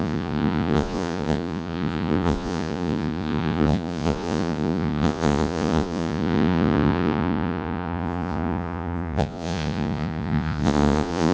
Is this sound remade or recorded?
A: remade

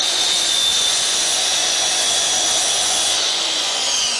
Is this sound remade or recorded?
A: remade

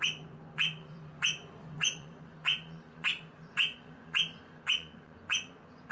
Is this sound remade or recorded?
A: remade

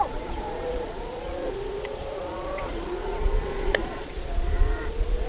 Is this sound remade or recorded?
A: remade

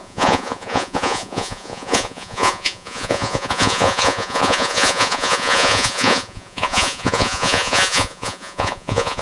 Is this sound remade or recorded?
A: remade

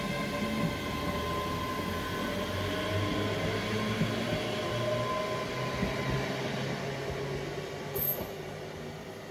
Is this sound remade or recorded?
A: recorded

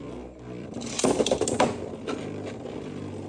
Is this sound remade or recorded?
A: recorded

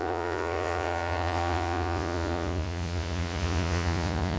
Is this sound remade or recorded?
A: remade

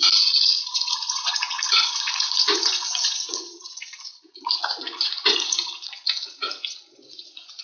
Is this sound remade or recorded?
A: remade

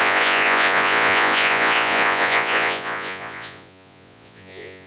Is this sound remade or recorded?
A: remade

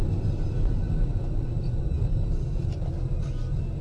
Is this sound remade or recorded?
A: recorded